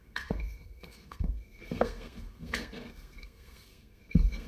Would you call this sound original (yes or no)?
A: no